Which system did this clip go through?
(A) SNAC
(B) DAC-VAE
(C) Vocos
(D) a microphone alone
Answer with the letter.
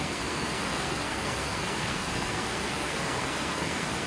A